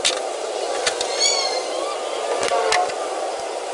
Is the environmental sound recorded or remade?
recorded